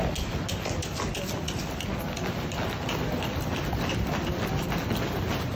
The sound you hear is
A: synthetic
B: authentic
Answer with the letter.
B